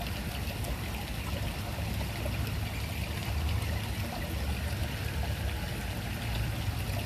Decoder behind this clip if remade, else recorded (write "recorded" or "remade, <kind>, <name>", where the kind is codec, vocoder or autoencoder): recorded